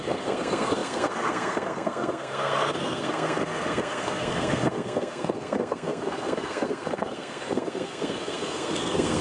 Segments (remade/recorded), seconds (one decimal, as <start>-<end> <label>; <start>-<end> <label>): 0.0-9.2 remade